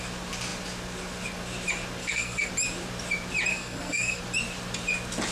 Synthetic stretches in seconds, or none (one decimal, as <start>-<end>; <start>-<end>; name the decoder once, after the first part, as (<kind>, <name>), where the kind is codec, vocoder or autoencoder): 2.0-2.5 (codec, SNAC); 3.5-4.2